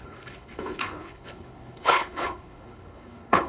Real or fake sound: fake